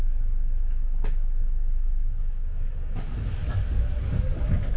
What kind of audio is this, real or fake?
fake